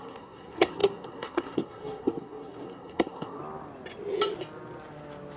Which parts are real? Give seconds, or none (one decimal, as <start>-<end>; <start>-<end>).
3.4-5.4